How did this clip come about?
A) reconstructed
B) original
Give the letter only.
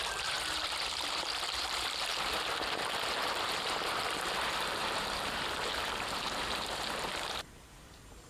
A